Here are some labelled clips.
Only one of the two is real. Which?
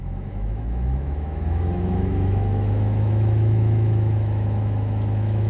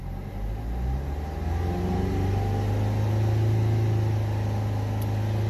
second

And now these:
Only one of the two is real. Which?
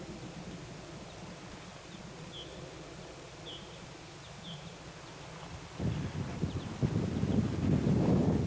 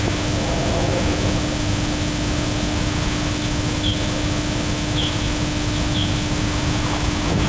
first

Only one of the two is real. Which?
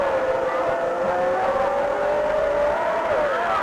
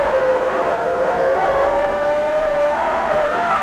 first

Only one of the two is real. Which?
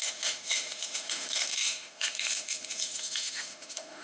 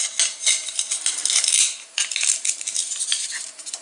second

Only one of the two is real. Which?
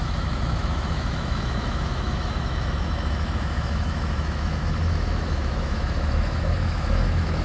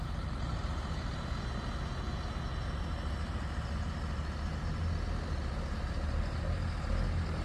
second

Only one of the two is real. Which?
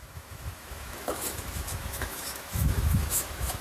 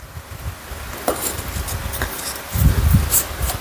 second